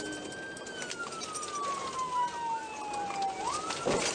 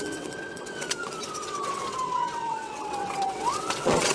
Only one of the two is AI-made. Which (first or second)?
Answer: second